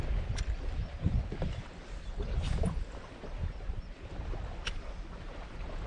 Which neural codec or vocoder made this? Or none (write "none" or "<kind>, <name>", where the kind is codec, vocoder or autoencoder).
none